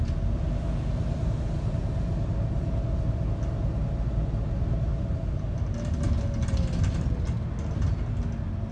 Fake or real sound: real